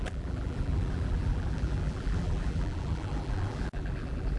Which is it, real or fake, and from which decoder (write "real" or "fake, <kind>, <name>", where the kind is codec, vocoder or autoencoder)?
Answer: fake, vocoder, BigVGAN v2